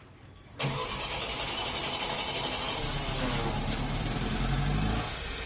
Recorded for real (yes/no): yes